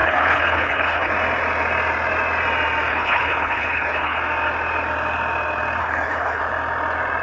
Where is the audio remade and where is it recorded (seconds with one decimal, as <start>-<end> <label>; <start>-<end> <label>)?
0.0-1.1 remade; 1.1-2.9 recorded; 2.9-4.2 remade; 4.2-5.8 recorded; 5.8-6.4 remade; 6.4-7.2 recorded